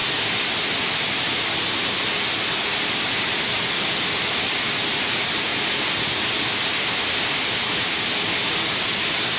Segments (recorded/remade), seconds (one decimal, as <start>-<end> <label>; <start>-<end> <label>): 0.0-9.4 recorded